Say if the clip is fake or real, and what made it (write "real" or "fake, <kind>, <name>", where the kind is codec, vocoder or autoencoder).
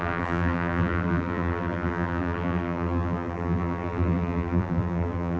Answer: fake, vocoder, BigVGAN v2